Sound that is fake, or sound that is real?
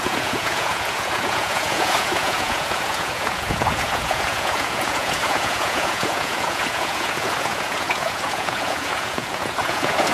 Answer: fake